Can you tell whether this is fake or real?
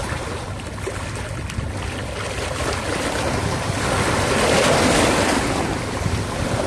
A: real